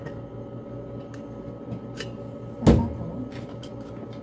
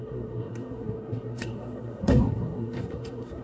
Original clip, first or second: first